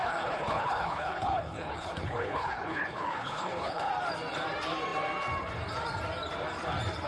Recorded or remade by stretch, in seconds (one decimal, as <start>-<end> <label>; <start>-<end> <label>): 0.0-3.9 remade; 3.9-7.1 recorded

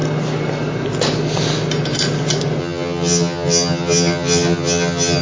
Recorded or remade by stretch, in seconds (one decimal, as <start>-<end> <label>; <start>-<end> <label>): 0.0-2.6 recorded; 2.6-5.2 remade